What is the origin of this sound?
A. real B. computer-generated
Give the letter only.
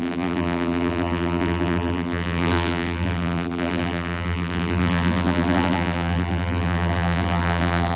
B